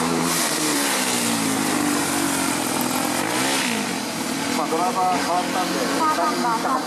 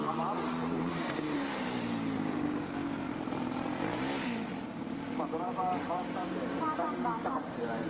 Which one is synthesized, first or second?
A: second